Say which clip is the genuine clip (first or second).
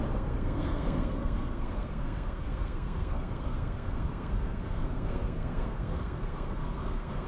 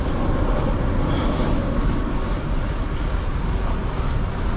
second